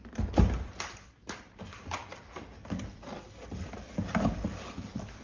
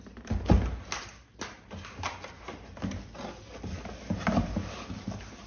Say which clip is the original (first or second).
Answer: second